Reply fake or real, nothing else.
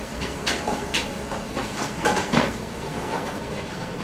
fake